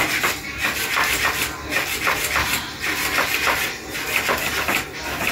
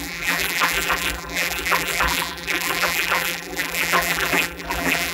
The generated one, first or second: second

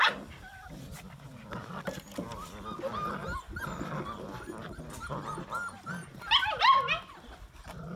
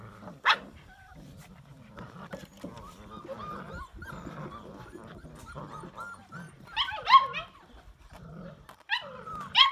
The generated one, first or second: second